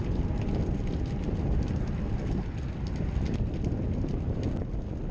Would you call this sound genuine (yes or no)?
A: yes